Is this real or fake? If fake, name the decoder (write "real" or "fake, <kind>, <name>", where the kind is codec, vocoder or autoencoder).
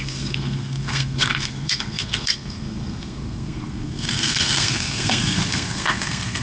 fake, codec, SNAC